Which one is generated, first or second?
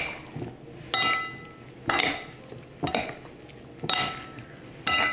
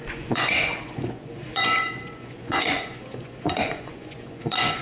second